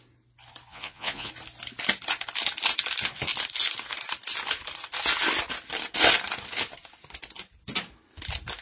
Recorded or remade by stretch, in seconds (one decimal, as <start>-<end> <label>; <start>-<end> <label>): 0.0-0.7 recorded; 0.7-1.3 remade; 1.3-8.6 recorded